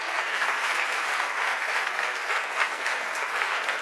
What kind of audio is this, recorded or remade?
remade